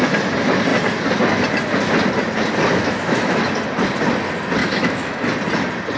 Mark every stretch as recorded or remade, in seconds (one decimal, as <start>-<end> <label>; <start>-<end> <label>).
0.0-2.7 recorded; 2.7-3.4 remade; 3.4-4.6 recorded; 4.6-5.2 remade; 5.2-6.0 recorded